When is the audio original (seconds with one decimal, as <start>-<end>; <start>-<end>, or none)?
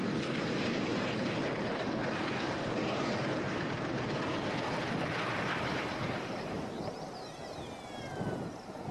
3.9-6.3; 7.4-8.0